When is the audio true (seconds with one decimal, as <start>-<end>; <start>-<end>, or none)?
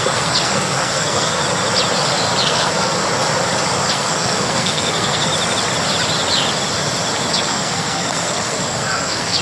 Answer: 1.4-2.4; 3.0-3.9; 5.3-7.3